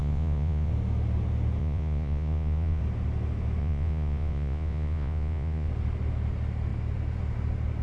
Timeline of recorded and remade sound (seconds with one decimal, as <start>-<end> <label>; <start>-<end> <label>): 0.0-0.7 remade; 0.7-1.6 recorded; 1.6-2.8 remade; 2.8-3.6 recorded; 3.6-5.7 remade; 5.7-7.8 recorded